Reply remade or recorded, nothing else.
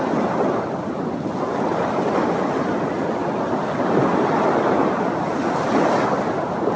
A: recorded